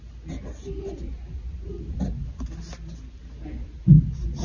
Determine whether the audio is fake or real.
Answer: real